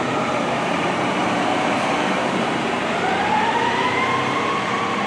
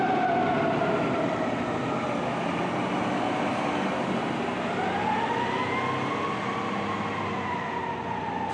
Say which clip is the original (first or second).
second